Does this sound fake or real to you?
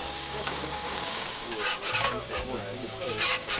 fake